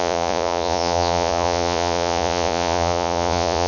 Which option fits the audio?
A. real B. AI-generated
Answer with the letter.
B